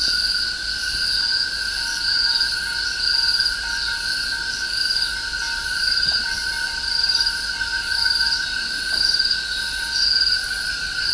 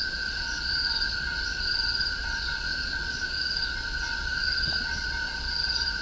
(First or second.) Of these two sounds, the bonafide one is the first